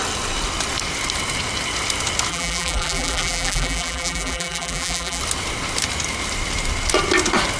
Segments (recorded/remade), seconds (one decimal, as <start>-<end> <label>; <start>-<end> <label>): 0.0-2.3 recorded; 2.3-5.2 remade; 5.2-7.6 recorded